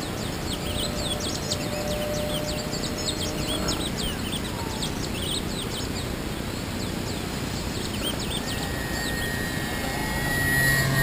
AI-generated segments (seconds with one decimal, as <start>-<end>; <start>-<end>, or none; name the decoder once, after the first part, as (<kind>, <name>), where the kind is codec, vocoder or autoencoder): none